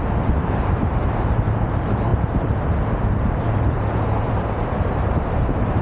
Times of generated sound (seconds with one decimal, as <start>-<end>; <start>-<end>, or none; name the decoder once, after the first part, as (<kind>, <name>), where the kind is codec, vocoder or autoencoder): 0.0-5.8 (vocoder, BigVGAN v2)